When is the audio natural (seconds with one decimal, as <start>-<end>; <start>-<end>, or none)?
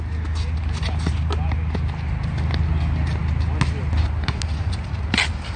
0.0-5.6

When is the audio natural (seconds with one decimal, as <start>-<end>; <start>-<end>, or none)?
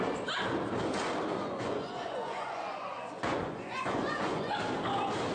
0.0-1.3; 4.5-5.3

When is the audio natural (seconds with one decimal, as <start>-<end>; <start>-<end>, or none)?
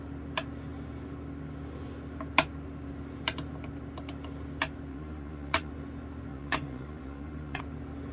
0.0-4.9; 5.7-6.3; 7.6-8.1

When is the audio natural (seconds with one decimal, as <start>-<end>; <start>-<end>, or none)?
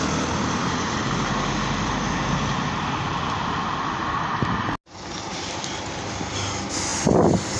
0.0-7.6